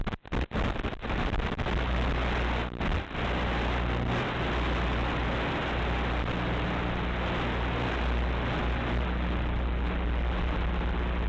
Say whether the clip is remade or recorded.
recorded